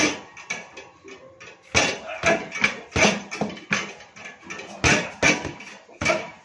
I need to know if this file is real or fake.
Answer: real